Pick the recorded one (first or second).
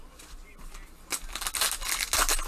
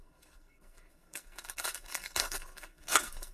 first